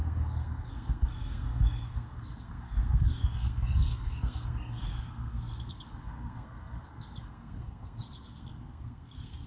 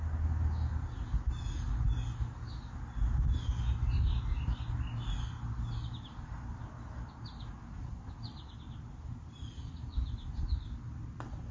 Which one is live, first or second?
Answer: second